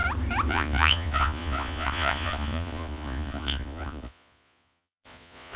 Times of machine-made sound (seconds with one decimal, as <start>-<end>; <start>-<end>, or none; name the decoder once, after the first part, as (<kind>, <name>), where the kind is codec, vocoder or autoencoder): 0.5-5.6 (vocoder, Vocos)